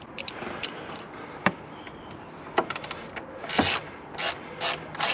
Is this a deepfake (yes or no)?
no